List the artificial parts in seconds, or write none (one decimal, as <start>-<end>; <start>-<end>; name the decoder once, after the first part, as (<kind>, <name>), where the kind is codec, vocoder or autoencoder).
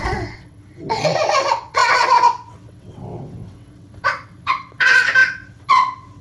0.0-6.2 (vocoder, WaveNeXt)